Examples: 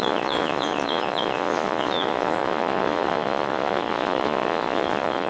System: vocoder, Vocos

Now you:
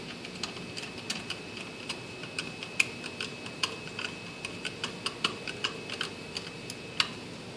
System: none